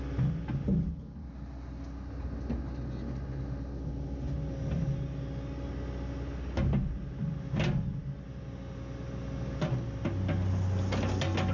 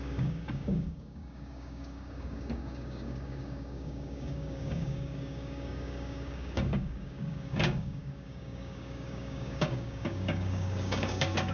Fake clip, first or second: second